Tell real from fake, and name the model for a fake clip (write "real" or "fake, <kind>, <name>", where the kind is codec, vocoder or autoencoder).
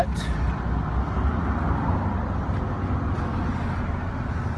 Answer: real